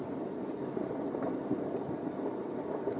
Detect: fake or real real